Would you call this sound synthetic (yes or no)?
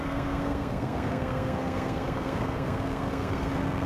yes